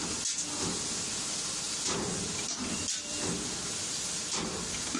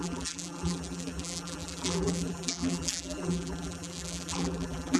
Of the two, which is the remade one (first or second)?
second